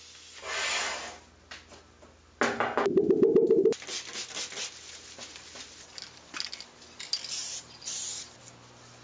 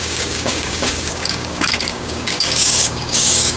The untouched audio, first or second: first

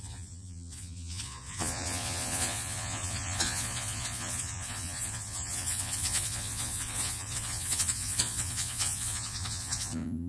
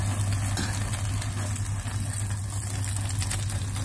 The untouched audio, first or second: second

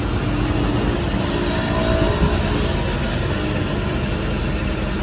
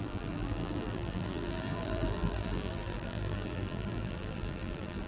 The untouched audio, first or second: first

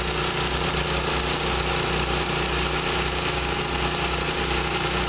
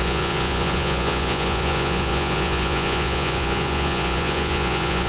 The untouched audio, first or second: first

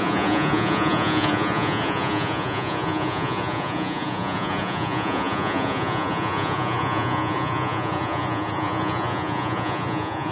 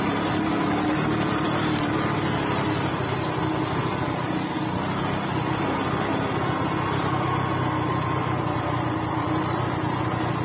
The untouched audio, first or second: second